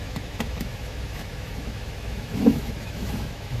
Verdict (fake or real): fake